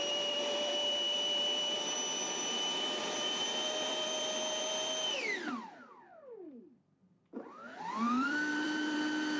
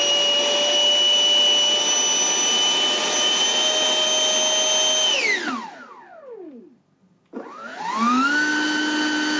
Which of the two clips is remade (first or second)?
first